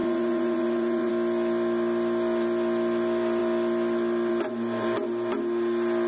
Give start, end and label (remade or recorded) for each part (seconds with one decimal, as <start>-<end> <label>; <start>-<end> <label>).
0.0-1.1 remade; 1.1-6.1 recorded